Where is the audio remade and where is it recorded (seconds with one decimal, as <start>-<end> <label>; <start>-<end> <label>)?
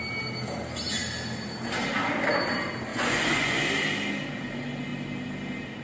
0.0-2.9 recorded; 2.9-3.6 remade; 3.6-5.8 recorded